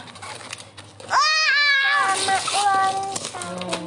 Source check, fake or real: real